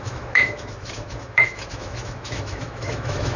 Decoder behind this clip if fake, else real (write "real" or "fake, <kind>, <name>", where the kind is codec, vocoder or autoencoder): fake, autoencoder, DAC-VAE